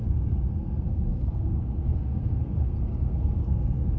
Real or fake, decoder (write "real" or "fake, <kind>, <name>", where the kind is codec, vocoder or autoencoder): fake, codec, SNAC